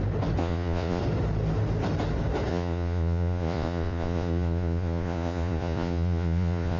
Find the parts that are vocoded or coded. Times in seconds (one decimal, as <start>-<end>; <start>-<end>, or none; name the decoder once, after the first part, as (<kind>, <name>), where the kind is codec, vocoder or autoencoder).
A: 0.4-1.0 (vocoder, Vocos); 2.5-6.8